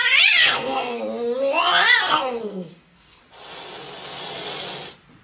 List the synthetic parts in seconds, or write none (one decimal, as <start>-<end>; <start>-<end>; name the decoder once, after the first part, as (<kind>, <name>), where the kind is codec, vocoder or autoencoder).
0.4-1.0 (codec, SNAC); 2.0-3.2